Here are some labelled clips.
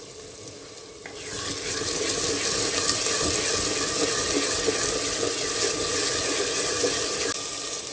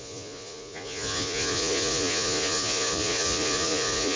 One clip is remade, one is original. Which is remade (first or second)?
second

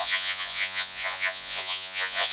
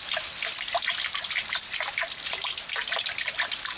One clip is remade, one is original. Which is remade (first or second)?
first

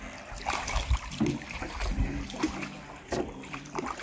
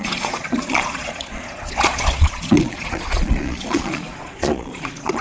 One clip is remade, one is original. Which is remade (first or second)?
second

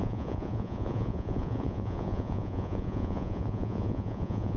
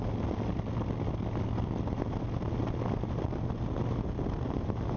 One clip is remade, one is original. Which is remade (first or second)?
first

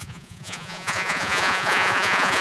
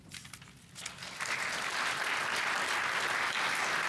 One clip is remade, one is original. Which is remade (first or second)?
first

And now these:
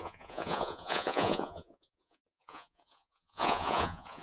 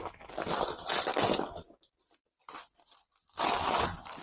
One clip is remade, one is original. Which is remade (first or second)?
first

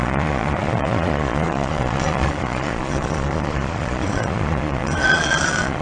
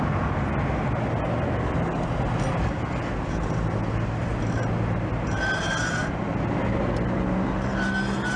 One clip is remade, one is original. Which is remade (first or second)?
first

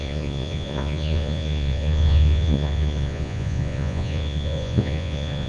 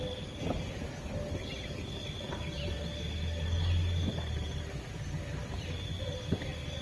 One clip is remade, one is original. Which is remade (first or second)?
first